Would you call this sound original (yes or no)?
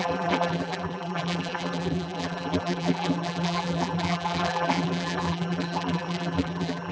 no